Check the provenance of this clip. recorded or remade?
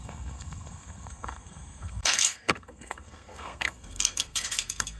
remade